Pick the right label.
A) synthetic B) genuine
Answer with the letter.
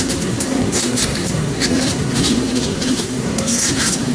A